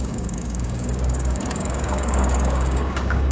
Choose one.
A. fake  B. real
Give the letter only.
A